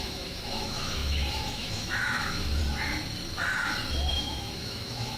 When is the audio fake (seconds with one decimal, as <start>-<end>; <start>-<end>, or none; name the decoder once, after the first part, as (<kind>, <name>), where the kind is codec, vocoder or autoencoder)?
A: 0.0-2.6 (autoencoder, DAC-VAE); 4.1-5.2